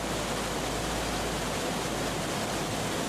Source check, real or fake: real